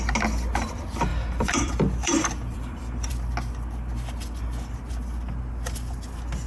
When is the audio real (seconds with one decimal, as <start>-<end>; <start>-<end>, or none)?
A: 0.0-1.1; 3.1-6.5